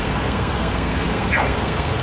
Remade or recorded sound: remade